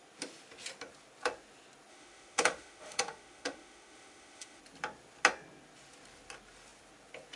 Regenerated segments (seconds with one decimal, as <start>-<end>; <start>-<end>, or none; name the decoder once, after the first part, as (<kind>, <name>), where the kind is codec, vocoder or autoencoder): 1.9-4.6 (autoencoder, DAC-VAE)